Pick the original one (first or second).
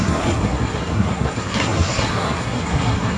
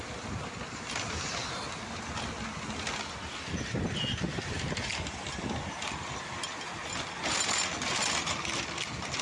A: second